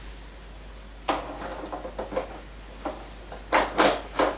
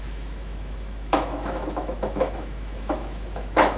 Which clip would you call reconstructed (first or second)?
second